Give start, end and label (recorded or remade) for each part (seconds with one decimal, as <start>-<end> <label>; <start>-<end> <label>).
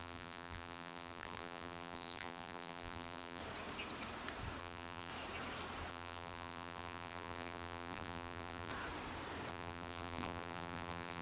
0.0-3.4 remade; 3.4-4.6 recorded; 4.6-5.1 remade; 5.1-5.9 recorded; 5.9-8.7 remade; 8.7-9.5 recorded; 9.5-11.2 remade